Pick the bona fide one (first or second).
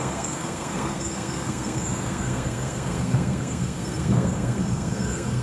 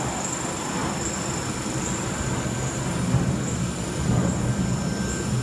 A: second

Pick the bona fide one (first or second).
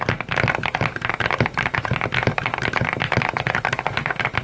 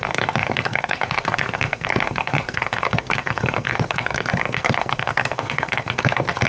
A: first